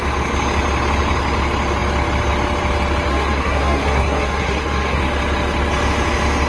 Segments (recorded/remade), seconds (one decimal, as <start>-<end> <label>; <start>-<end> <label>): 0.0-3.1 recorded; 3.1-5.0 remade; 5.0-6.5 recorded